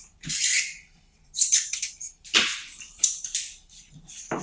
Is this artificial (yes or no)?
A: yes